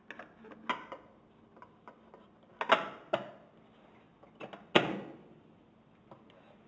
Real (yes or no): yes